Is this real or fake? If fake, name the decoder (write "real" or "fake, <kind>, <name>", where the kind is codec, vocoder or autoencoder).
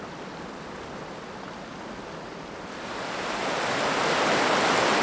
real